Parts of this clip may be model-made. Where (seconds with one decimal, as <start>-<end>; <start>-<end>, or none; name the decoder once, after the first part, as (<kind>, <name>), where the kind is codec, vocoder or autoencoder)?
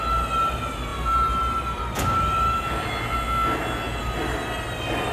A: none